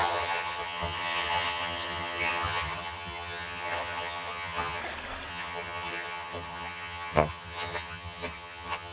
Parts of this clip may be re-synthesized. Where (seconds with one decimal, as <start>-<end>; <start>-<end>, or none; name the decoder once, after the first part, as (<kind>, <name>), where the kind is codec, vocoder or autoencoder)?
0.0-4.8 (vocoder, HiFi-GAN); 5.3-8.9